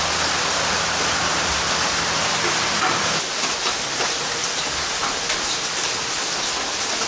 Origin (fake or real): real